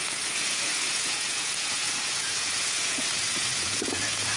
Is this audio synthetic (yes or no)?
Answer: yes